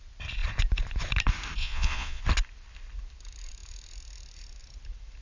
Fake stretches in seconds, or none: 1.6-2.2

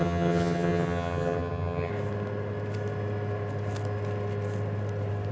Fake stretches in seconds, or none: 0.0-1.9

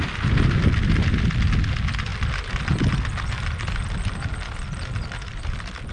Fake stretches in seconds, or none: none

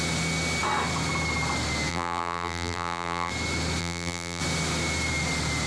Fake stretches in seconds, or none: 1.9-3.3; 3.8-4.4

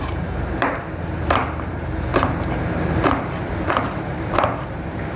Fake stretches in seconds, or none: 0.0-5.2